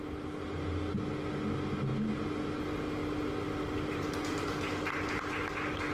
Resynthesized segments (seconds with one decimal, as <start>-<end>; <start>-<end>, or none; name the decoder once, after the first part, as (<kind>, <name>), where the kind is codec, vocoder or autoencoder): none